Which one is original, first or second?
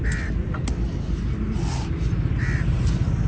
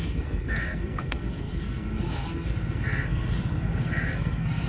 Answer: first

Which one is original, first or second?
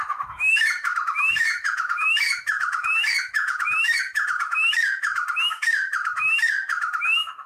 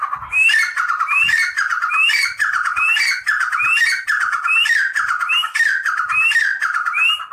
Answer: second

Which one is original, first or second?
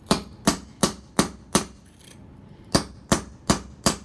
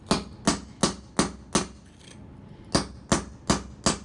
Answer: second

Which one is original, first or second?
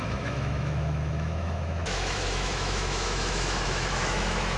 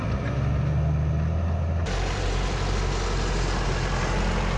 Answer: second